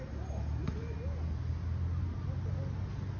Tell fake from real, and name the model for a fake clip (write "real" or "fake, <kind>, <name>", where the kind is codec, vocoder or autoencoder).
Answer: real